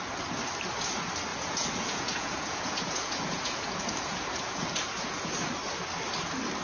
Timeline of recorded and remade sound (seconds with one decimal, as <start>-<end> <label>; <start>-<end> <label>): 0.0-1.3 recorded; 1.3-5.3 remade; 5.3-6.6 recorded